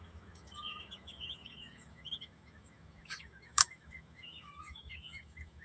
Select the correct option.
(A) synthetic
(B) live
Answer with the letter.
A